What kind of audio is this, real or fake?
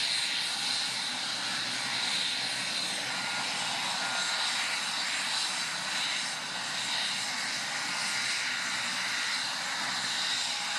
real